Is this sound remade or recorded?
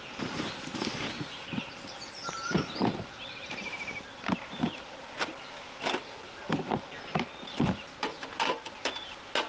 recorded